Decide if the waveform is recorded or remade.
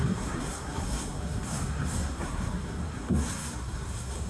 remade